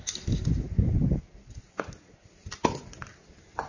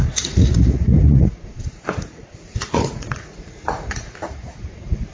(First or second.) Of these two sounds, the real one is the first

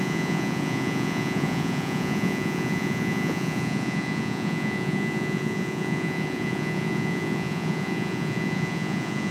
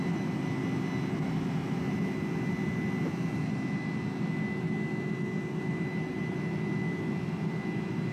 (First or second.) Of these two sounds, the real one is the second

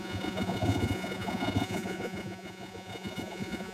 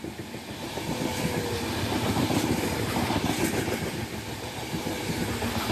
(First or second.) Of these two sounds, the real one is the second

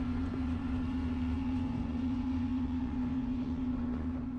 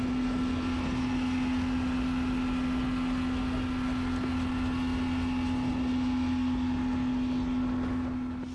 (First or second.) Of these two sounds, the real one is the second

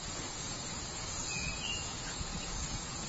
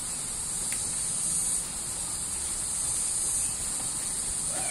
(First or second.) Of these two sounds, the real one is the second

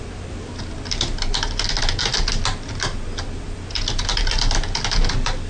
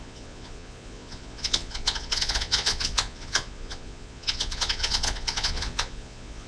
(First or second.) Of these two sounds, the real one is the first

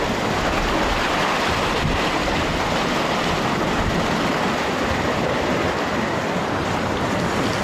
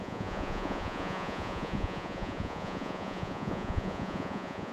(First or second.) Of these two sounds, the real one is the first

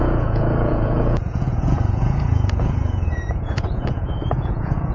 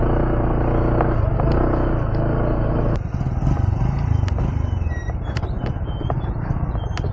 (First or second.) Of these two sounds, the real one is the second